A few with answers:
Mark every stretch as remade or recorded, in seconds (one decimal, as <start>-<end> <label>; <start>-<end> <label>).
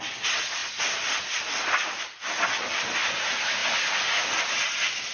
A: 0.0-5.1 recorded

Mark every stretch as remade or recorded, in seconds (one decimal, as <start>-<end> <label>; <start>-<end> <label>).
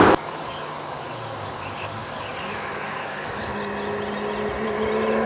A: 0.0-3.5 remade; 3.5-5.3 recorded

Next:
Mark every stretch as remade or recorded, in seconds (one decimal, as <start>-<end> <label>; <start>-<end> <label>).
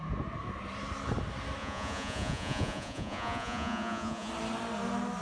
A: 0.0-1.6 recorded; 1.6-4.3 remade; 4.3-5.2 recorded